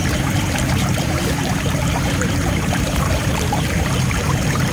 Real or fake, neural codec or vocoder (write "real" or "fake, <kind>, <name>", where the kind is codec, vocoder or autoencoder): fake, vocoder, BigVGAN v2